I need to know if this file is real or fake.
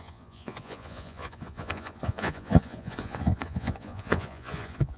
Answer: fake